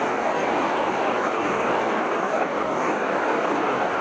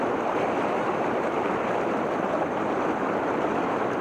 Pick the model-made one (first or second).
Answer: first